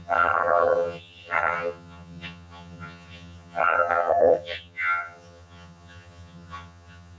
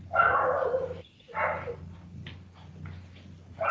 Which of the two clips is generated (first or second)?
first